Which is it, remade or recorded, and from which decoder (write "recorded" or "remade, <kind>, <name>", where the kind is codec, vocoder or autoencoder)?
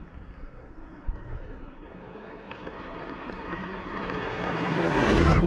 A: remade, codec, SNAC